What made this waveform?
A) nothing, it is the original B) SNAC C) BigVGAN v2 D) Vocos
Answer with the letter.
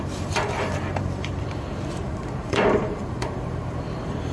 C